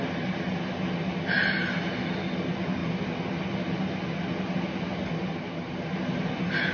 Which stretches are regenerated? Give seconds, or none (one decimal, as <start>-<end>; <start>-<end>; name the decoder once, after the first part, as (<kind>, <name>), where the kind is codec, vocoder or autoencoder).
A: none